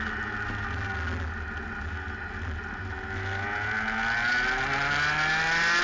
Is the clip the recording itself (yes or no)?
yes